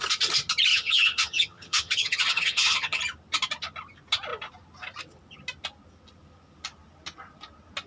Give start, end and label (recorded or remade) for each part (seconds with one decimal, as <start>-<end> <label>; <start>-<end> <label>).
0.0-0.7 recorded; 0.7-3.0 remade; 3.0-7.9 recorded